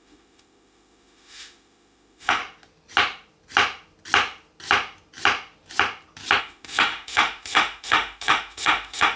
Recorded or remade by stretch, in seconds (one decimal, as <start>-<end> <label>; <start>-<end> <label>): 0.0-2.4 remade; 2.4-6.4 recorded; 6.4-9.2 remade